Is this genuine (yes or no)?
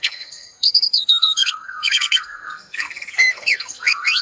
no